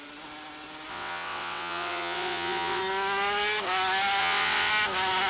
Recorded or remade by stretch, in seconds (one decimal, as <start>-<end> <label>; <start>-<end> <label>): 0.0-0.9 recorded; 0.9-2.8 remade; 2.8-4.2 recorded; 4.2-4.7 remade; 4.7-5.3 recorded